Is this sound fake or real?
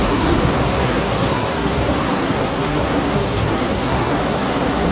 fake